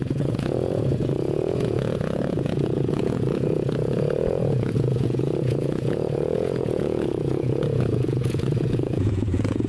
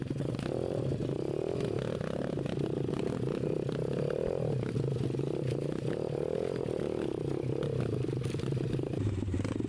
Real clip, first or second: second